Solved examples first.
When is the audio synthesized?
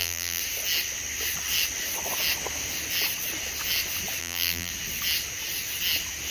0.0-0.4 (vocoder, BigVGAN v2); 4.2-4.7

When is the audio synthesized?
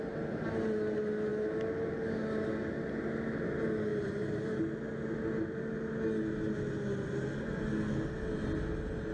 3.9-4.6 (vocoder, BigVGAN v2)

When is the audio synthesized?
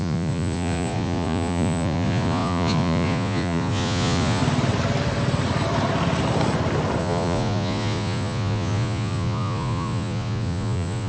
0.0-4.4 (vocoder, Vocos); 7.0-11.1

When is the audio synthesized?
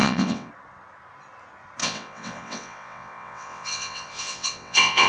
0.0-0.5 (vocoder, WaveNeXt); 1.8-5.1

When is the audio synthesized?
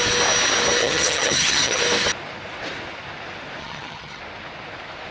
0.8-1.8 (vocoder, HiFi-GAN); 3.6-4.2